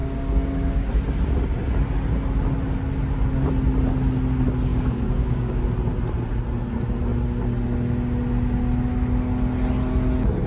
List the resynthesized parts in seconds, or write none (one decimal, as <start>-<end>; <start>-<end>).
0.0-0.9; 4.7-5.6